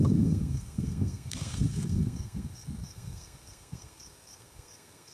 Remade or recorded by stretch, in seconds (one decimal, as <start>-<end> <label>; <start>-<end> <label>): 0.0-5.1 remade